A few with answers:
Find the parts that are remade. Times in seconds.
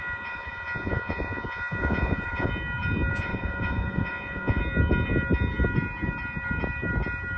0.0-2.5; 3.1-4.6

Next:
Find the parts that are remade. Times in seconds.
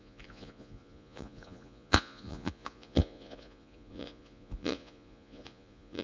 0.0-6.0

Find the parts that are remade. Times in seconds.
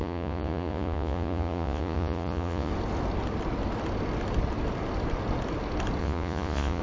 0.0-2.7; 6.0-6.8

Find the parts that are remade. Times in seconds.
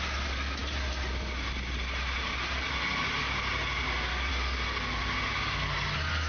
none